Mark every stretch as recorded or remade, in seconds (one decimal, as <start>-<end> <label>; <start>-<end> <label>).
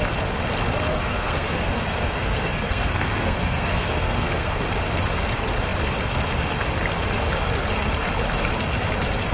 0.0-0.9 recorded; 0.9-4.6 remade; 4.6-9.3 recorded